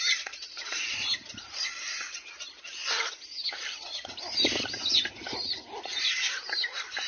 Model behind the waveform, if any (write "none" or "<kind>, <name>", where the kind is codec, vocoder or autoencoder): none